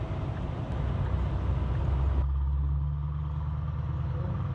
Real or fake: real